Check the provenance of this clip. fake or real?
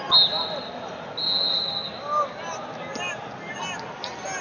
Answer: real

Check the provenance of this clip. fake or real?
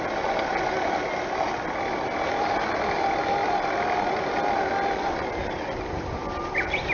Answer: real